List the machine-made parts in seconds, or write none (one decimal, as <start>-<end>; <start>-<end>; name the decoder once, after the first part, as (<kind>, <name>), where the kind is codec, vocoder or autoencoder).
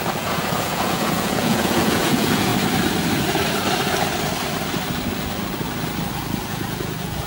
0.0-2.5 (vocoder, Vocos); 6.1-7.3